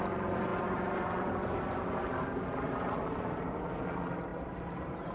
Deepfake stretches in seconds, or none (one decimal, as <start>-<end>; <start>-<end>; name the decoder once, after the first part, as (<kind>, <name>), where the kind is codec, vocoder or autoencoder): 0.5-3.6 (vocoder, BigVGAN v2); 4.3-5.1